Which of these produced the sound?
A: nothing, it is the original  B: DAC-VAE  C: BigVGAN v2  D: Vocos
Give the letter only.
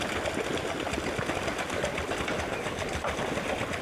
A